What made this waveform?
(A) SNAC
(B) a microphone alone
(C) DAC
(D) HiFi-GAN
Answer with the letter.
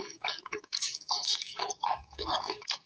C